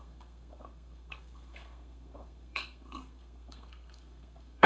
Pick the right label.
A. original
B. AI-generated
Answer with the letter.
B